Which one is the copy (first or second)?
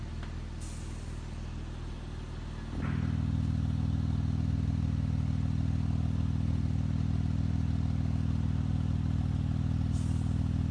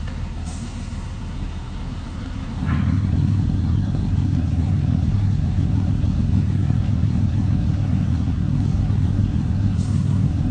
second